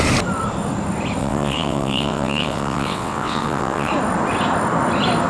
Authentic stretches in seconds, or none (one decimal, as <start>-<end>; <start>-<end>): 0.0-1.2; 3.9-5.3